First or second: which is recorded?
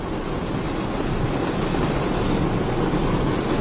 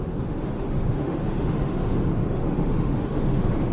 first